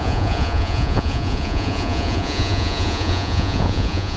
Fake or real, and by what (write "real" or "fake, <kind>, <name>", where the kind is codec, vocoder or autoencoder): fake, vocoder, Vocos